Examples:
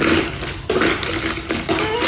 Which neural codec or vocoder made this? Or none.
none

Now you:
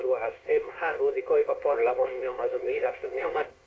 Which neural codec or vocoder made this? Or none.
codec, ZipCodec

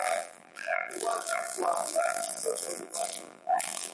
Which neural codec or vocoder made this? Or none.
vocoder, BigVGAN v2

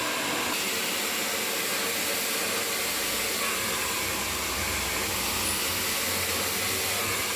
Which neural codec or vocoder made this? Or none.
none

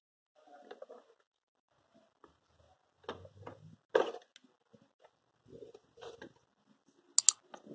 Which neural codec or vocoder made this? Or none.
none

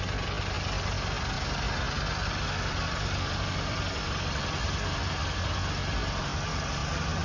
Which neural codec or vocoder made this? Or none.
none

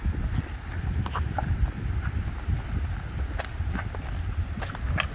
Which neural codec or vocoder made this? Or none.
none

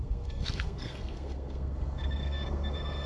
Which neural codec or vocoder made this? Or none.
codec, SNAC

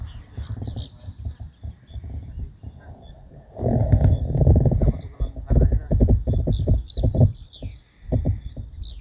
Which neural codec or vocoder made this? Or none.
none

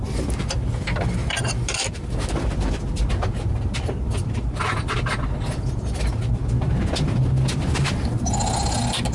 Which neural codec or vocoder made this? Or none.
none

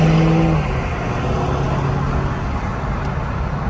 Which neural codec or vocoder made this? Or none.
none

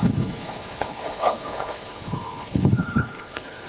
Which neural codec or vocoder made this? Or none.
codec, HILCodec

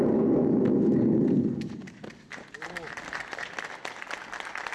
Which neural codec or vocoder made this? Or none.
none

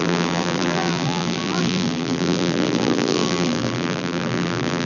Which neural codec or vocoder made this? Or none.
vocoder, BigVGAN v2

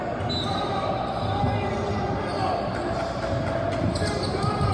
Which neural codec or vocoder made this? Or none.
none